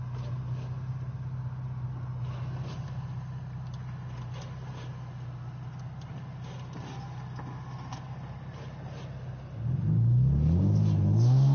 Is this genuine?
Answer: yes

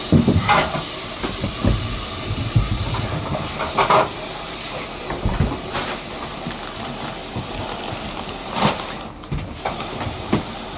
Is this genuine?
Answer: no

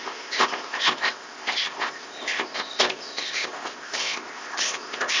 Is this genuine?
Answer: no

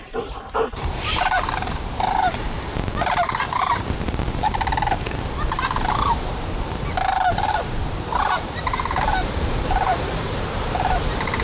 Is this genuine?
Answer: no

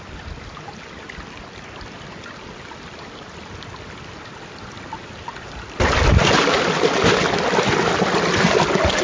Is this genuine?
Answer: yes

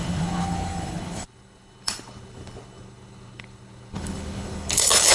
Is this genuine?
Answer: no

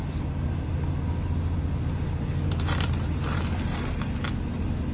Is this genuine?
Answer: yes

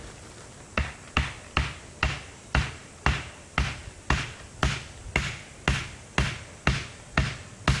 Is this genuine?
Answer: yes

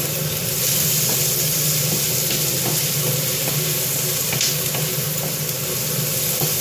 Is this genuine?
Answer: yes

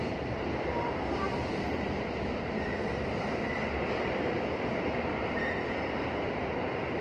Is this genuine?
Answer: no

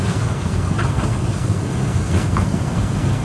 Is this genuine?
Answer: no